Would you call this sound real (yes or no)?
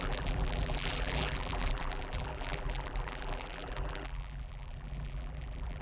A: no